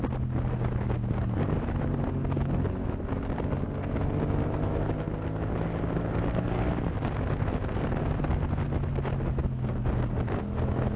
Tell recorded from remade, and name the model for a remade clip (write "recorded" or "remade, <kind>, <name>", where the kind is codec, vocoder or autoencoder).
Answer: recorded